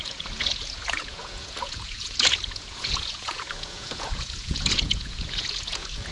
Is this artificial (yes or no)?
yes